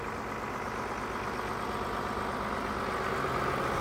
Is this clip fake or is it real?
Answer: real